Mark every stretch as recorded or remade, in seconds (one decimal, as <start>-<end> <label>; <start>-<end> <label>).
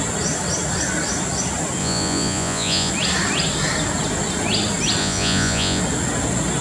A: 0.0-1.8 recorded; 1.8-2.9 remade; 2.9-5.0 recorded; 5.0-5.8 remade; 5.8-6.6 recorded